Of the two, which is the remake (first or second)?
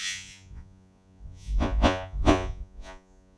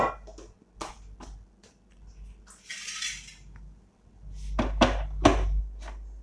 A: first